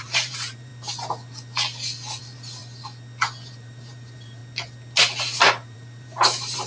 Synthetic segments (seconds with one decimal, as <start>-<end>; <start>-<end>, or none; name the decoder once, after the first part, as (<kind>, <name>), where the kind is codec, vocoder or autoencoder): 0.0-0.7 (vocoder, BigVGAN v2); 2.2-2.6; 3.5-4.4; 5.2-6.7